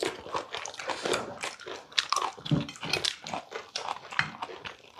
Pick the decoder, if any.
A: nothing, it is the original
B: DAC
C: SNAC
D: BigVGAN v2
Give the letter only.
D